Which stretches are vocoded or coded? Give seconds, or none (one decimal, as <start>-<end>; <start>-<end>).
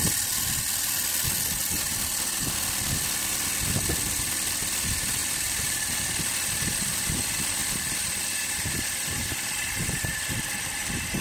5.2-6.0